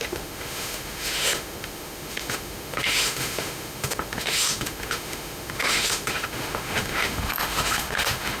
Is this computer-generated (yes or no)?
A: yes